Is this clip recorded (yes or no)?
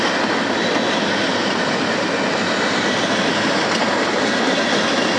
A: yes